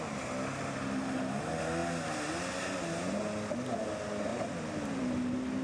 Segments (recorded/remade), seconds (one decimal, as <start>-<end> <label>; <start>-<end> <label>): 0.0-5.6 recorded